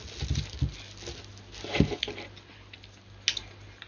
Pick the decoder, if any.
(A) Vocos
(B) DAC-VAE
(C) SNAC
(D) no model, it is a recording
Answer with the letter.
D